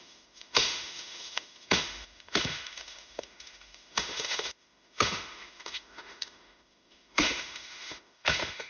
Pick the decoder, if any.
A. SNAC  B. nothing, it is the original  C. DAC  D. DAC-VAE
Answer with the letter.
D